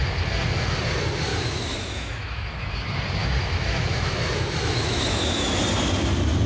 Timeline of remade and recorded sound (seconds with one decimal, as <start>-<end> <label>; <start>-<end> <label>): 0.0-1.3 recorded; 1.3-2.5 remade; 2.5-3.2 recorded; 3.2-5.6 remade; 5.6-6.5 recorded